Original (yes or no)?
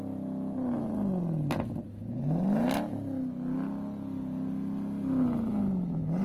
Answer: yes